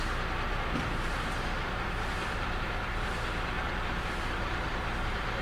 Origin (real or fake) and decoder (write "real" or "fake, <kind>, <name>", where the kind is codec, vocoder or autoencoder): fake, vocoder, BigVGAN v2